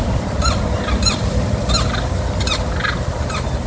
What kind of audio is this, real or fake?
fake